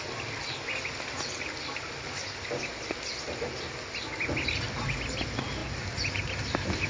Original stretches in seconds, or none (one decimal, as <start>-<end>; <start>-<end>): 0.0-6.9

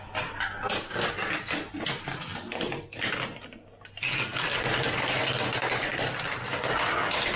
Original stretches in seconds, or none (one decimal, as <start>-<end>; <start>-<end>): 0.0-7.4

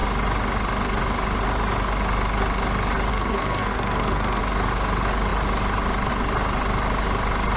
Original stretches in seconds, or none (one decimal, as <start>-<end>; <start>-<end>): 0.0-3.1; 4.4-7.6

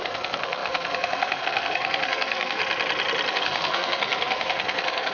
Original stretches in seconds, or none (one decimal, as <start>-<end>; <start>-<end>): 2.6-3.3

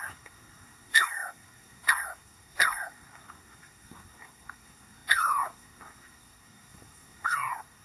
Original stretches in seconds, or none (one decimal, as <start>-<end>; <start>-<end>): none

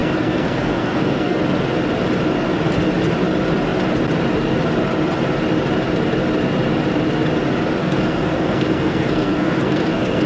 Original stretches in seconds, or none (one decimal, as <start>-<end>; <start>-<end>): 1.4-7.8

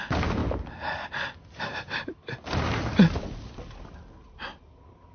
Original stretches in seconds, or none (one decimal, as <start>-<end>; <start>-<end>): 0.0-0.4; 3.5-5.1

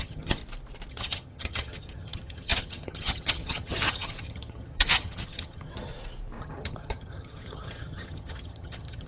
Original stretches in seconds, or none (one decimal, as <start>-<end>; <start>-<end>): 0.4-0.9; 5.9-6.4